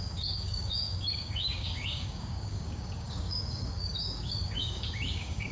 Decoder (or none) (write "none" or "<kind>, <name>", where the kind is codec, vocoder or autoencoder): codec, DAC